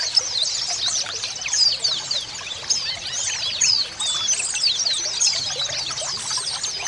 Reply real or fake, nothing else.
real